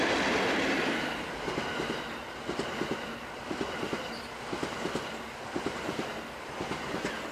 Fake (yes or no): no